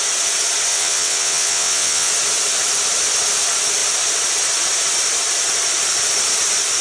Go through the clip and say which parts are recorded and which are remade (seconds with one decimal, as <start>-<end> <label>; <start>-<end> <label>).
0.0-0.7 recorded; 0.7-2.1 remade; 2.1-6.8 recorded